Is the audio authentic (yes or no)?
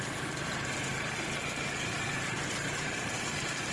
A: no